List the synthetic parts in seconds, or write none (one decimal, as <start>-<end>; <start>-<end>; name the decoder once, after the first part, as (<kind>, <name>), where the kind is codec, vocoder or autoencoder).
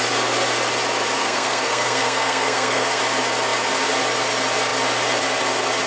1.2-3.0 (codec, SNAC)